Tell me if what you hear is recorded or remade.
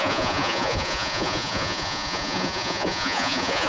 remade